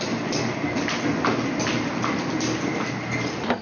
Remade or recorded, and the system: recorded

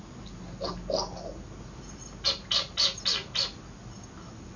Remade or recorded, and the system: recorded